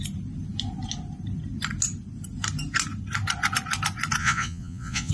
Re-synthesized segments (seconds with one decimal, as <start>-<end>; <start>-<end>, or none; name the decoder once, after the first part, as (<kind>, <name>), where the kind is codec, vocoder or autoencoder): 4.2-5.1 (vocoder, Vocos)